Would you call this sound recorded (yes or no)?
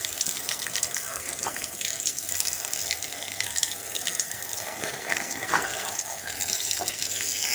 no